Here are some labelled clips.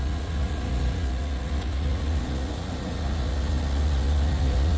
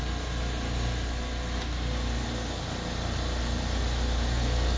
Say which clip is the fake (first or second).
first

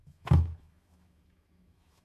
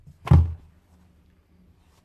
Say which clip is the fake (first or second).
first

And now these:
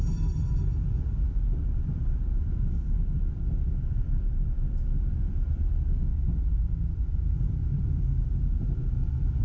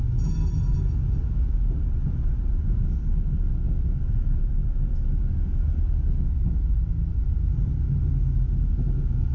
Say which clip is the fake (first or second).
first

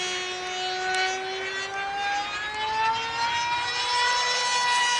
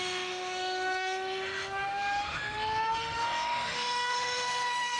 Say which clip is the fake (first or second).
second